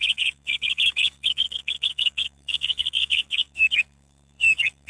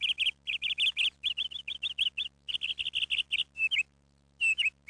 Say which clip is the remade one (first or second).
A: first